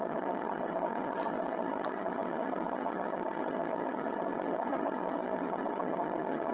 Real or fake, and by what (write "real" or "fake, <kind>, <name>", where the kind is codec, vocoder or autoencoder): fake, vocoder, HiFi-GAN